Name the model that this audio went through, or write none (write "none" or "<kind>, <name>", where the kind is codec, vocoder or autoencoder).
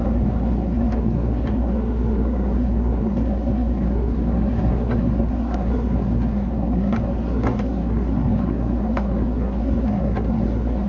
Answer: codec, SNAC